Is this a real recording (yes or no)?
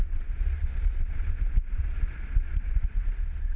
no